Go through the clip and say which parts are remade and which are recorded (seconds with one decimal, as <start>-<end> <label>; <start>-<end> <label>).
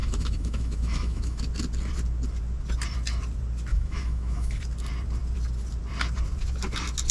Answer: 0.0-1.4 remade; 1.4-3.7 recorded; 3.7-4.6 remade; 4.6-7.1 recorded